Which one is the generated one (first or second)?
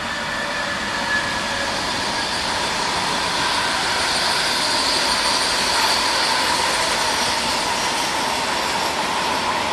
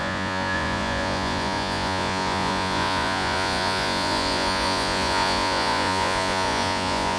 second